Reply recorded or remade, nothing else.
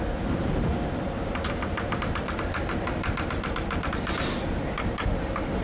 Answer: recorded